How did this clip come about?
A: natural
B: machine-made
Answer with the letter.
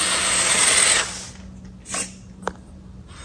A